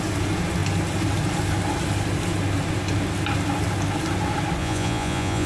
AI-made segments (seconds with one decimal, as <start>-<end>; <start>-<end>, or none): 4.6-5.5